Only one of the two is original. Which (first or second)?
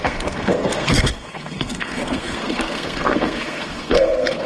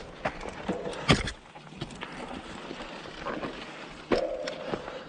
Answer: second